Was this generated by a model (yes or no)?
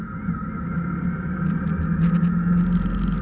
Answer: no